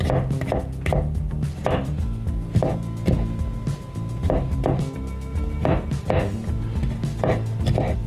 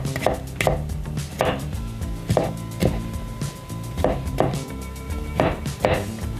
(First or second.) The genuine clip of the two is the first